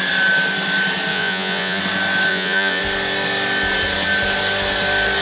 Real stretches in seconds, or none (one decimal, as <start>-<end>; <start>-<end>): 0.0-1.1; 1.8-2.3; 2.8-5.2